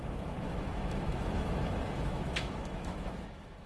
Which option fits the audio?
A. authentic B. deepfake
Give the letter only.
B